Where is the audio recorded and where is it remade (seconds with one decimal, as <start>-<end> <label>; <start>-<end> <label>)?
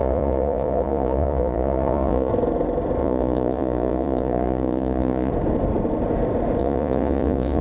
0.0-2.3 remade; 2.3-3.0 recorded; 3.0-5.3 remade; 5.3-6.6 recorded; 6.6-7.6 remade